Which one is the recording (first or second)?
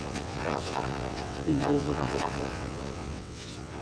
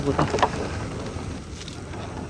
second